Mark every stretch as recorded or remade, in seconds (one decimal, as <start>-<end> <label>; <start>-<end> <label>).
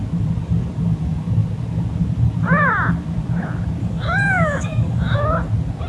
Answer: 0.0-3.8 recorded; 3.8-5.2 remade; 5.2-5.9 recorded